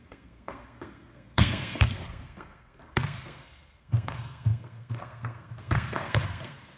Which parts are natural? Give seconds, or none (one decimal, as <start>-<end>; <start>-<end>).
none